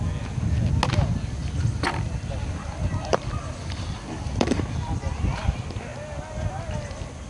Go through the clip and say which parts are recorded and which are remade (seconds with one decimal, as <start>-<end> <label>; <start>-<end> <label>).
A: 0.0-1.4 recorded; 1.4-4.6 remade; 4.6-7.3 recorded

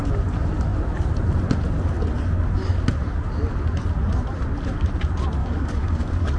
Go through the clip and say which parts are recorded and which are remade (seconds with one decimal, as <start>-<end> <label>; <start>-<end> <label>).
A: 0.0-5.4 recorded; 5.4-6.4 remade

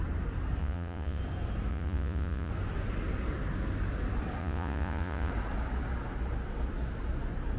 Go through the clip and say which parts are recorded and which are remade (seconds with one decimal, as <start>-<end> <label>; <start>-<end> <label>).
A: 0.0-0.6 recorded; 0.6-1.2 remade; 1.2-1.7 recorded; 1.7-2.5 remade; 2.5-4.4 recorded; 4.4-5.3 remade; 5.3-7.6 recorded

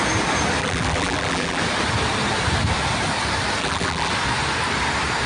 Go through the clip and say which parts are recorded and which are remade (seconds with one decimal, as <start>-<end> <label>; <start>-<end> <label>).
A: 0.0-0.6 recorded; 0.6-1.6 remade; 1.6-3.6 recorded; 3.6-4.1 remade; 4.1-5.3 recorded

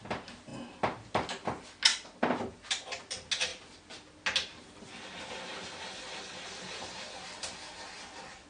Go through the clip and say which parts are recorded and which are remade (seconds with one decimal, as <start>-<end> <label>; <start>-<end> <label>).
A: 0.0-8.5 recorded

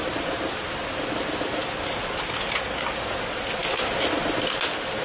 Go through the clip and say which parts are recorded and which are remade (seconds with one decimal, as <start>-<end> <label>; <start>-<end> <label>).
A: 0.0-5.0 recorded

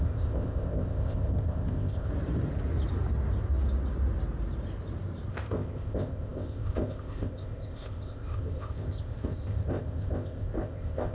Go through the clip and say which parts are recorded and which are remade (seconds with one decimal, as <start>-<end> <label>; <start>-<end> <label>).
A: 0.0-2.1 remade; 2.1-5.3 recorded; 5.3-11.1 remade